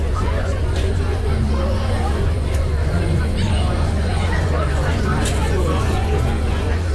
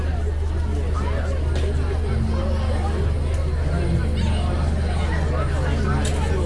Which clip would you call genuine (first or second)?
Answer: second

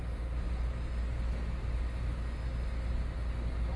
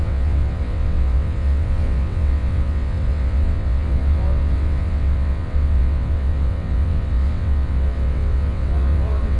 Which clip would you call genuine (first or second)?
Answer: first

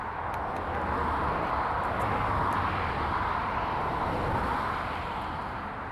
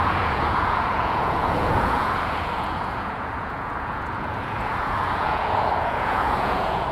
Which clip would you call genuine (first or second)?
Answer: first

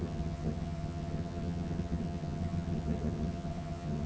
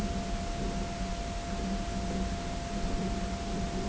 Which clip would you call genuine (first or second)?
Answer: second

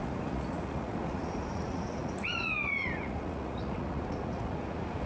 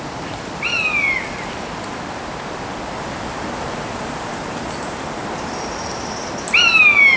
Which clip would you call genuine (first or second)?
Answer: second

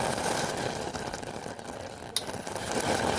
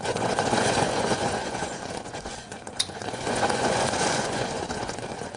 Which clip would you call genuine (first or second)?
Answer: first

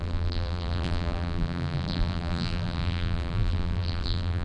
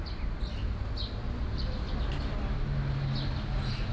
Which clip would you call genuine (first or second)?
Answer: second